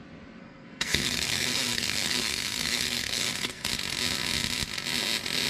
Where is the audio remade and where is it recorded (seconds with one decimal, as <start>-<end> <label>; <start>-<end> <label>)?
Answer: 0.0-0.4 recorded; 0.4-3.7 remade; 3.7-5.5 recorded